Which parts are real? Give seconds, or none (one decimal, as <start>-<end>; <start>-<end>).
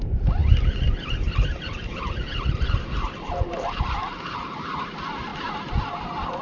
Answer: 0.0-6.4